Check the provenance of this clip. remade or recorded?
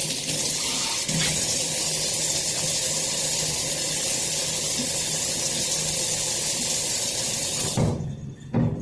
recorded